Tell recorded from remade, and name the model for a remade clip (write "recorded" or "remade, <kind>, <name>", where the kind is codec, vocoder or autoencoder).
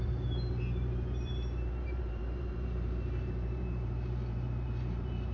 remade, vocoder, BigVGAN v2